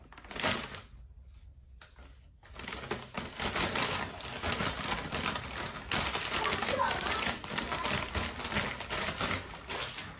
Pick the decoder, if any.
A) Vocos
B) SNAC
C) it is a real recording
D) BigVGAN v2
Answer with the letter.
C